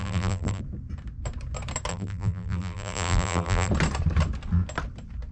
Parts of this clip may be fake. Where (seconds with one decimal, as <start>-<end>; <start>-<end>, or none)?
0.0-0.6; 1.9-3.7